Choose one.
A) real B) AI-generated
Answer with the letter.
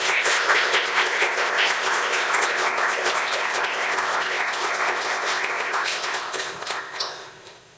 B